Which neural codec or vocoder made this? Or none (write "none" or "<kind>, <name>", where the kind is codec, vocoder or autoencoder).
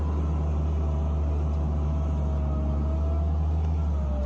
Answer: none